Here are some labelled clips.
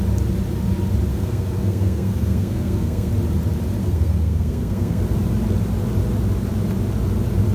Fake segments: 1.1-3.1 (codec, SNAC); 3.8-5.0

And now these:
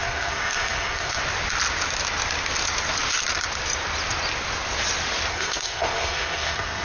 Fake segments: 0.0-1.2 (codec, SNAC); 5.3-6.8

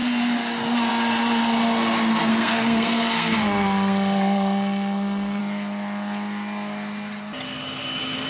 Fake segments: 2.3-5.4 (codec, SNAC)

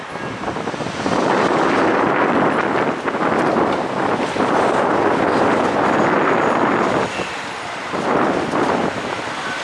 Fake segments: none

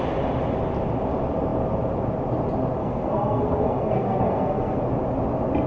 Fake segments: 2.8-4.8 (codec, SNAC)